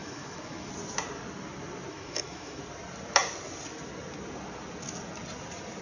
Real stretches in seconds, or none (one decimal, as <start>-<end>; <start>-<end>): 0.7-1.9; 2.6-5.8